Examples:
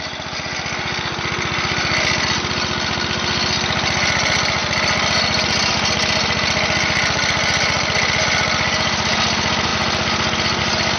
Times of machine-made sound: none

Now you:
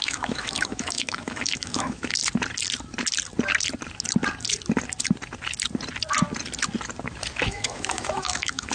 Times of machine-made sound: 0.0-2.2 (autoencoder, DAC-VAE); 7.4-8.7

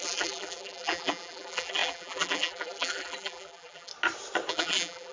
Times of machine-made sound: 0.0-3.9 (vocoder, BigVGAN v2); 4.5-5.1